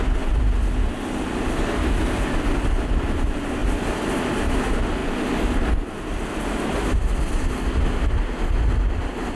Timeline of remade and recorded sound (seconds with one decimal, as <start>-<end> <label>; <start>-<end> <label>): 0.0-9.4 recorded